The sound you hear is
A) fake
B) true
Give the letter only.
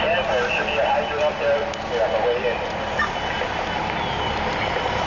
B